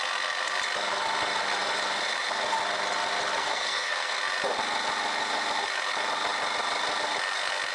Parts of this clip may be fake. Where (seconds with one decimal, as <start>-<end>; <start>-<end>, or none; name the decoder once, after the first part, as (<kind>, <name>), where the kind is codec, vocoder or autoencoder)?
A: 3.4-4.2 (codec, SNAC)